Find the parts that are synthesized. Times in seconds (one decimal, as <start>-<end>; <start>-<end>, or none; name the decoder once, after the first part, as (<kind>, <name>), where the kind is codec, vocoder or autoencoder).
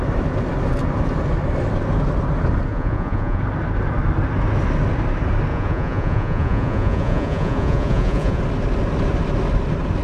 2.7-3.4 (vocoder, Vocos); 5.5-8.4